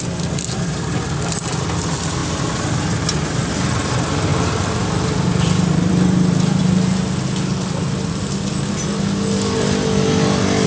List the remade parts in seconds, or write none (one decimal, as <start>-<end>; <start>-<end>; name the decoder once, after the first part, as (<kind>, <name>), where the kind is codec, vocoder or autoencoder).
4.3-6.6 (vocoder, BigVGAN v2)